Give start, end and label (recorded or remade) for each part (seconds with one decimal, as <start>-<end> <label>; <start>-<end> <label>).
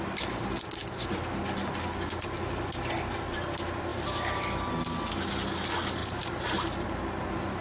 0.0-3.9 recorded; 3.9-4.4 remade; 4.4-6.0 recorded; 6.0-6.9 remade; 6.9-7.6 recorded